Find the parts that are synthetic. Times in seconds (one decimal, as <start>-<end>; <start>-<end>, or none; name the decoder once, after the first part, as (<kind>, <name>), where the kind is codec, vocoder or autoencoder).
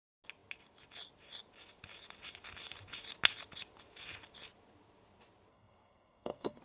5.5-6.6 (codec, SNAC)